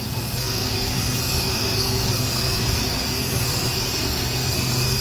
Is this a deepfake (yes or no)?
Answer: yes